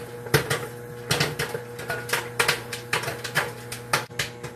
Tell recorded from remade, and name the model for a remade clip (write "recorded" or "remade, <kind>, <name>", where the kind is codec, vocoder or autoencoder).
recorded